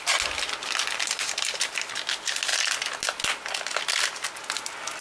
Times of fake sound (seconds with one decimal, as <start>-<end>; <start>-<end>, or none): none